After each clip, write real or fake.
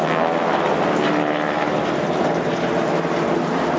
real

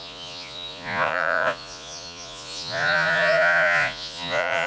fake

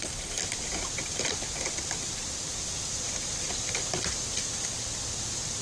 real